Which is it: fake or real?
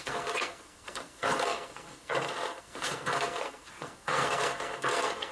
fake